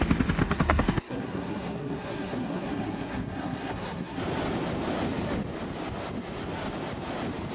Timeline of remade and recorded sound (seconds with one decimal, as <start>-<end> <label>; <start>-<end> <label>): 0.0-0.4 recorded; 0.4-4.2 remade; 4.2-7.5 recorded